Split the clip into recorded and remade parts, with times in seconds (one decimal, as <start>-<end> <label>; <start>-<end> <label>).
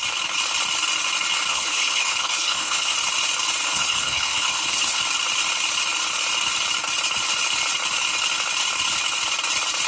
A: 0.0-1.5 recorded; 1.5-2.9 remade; 2.9-3.6 recorded; 3.6-5.0 remade; 5.0-9.9 recorded